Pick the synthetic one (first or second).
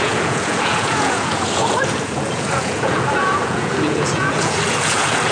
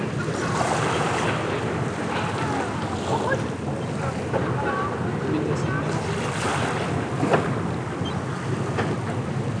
first